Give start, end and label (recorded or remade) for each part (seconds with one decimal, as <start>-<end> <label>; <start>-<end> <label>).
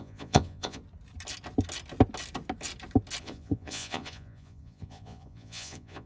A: 0.0-0.8 remade; 0.8-3.2 recorded; 3.2-6.1 remade